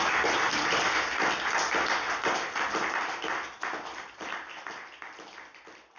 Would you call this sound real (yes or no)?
yes